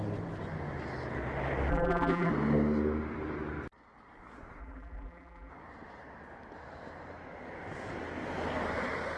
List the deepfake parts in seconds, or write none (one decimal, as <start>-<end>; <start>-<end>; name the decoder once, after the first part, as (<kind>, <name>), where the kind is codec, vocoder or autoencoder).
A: 1.7-2.3 (vocoder, BigVGAN v2); 4.6-5.5